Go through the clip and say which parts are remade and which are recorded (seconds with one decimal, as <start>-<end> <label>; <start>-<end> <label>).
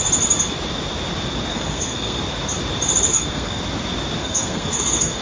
0.0-1.5 recorded; 1.5-2.2 remade; 2.2-3.1 recorded; 3.1-3.6 remade; 3.6-4.2 recorded; 4.2-5.2 remade